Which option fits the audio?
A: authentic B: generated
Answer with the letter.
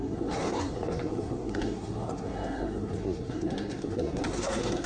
B